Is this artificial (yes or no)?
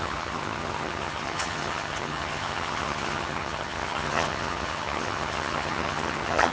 yes